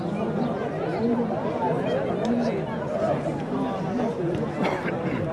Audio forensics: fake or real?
real